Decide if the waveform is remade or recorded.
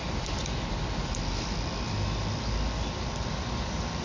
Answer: recorded